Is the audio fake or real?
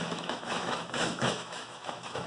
fake